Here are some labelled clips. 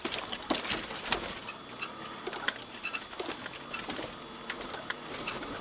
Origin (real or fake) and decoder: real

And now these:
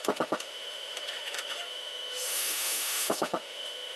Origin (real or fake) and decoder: fake, autoencoder, DAC-VAE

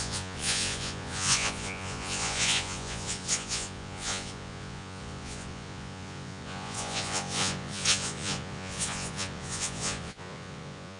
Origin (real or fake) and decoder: fake, vocoder, Vocos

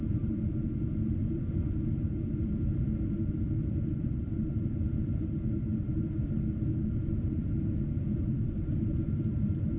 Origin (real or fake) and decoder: fake, vocoder, BigVGAN v2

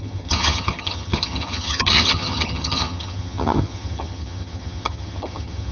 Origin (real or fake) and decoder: fake, vocoder, HiFi-GAN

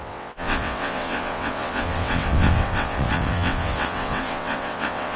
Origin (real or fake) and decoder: fake, vocoder, WaveNeXt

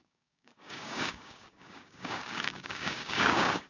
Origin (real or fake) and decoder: fake, codec, DAC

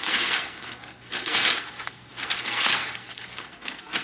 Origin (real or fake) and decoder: fake, codec, SNAC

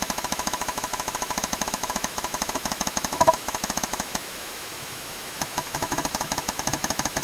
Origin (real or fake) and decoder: fake, autoencoder, DAC-VAE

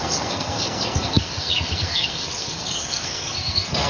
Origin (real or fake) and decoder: fake, codec, SNAC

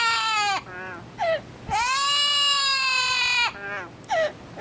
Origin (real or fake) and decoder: real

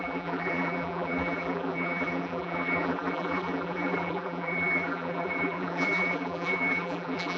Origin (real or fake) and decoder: fake, vocoder, BigVGAN v2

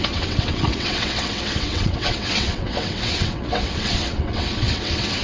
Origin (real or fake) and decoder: fake, vocoder, WaveNeXt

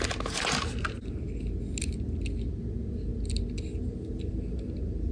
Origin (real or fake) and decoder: real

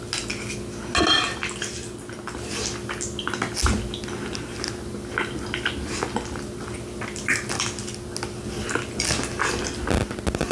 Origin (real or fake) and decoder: real